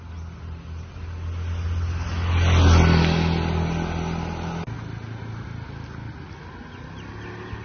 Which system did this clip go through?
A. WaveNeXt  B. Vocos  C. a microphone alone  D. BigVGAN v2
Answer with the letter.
C